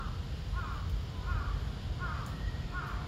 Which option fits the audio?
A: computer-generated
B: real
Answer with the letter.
B